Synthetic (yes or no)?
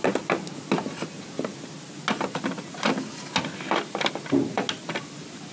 no